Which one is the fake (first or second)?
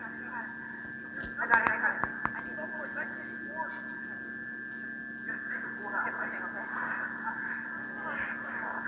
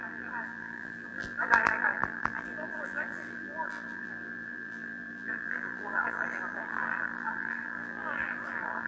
second